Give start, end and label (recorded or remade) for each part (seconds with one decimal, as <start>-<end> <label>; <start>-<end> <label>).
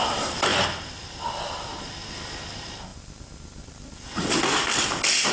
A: 0.0-5.3 recorded